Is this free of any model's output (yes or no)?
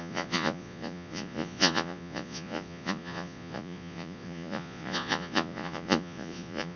no